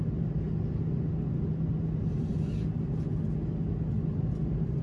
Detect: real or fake real